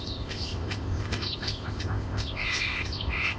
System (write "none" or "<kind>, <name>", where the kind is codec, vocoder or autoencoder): codec, ZipCodec